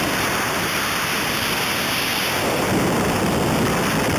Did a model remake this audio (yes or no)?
yes